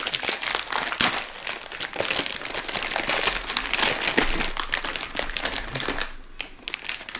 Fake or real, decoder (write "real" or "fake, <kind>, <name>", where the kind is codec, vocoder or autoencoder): real